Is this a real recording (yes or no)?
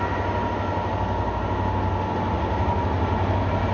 yes